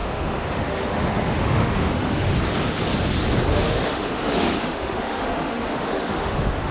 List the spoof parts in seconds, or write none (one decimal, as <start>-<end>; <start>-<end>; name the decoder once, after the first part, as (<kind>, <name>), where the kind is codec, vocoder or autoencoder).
0.0-2.3 (autoencoder, DAC-VAE); 3.5-6.7